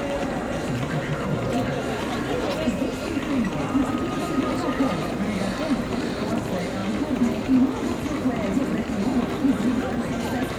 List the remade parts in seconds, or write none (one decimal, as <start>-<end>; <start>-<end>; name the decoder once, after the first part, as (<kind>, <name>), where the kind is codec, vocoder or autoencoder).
none